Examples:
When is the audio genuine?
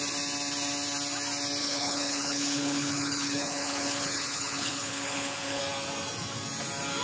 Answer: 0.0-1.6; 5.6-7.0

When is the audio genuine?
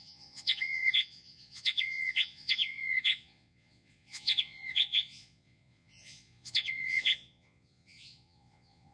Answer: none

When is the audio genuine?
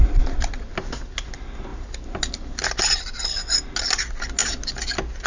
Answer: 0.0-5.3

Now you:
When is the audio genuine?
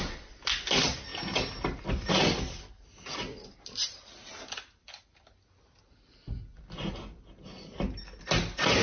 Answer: 0.0-8.8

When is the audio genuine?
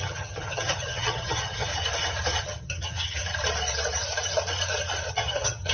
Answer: 1.7-2.4; 3.2-5.1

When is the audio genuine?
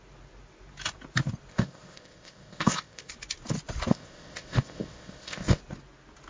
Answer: 0.0-1.5; 3.1-3.9; 5.6-6.3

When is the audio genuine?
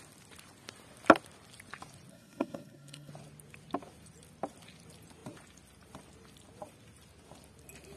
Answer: 0.0-2.1; 3.1-8.0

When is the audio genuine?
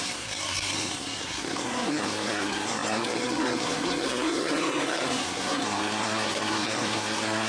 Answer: none